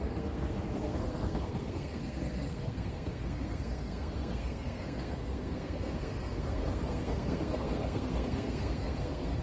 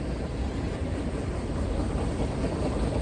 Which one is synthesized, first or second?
first